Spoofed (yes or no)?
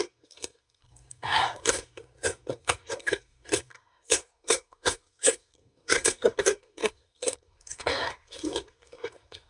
yes